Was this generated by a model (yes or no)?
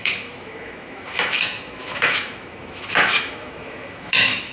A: yes